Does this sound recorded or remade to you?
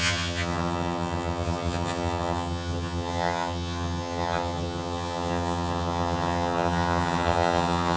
remade